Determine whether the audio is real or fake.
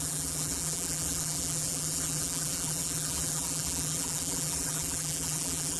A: fake